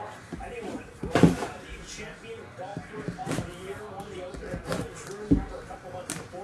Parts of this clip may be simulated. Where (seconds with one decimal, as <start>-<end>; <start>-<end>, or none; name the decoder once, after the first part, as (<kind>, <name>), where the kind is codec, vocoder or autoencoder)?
0.0-6.4 (vocoder, BigVGAN v2)